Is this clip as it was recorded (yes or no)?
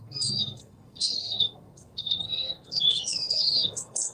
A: no